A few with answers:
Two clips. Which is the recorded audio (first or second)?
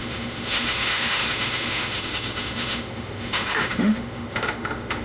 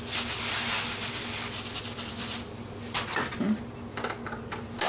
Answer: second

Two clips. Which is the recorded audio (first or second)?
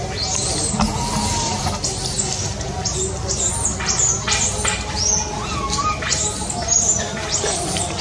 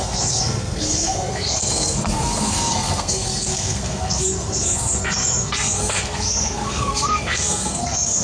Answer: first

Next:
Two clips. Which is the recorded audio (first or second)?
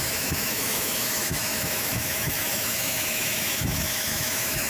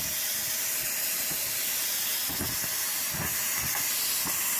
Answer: second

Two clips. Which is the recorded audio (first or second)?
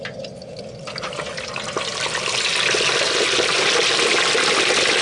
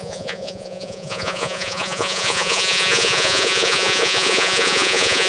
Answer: first